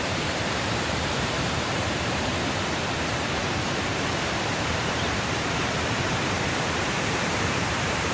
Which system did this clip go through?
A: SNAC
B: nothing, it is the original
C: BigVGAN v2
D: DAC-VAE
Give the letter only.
C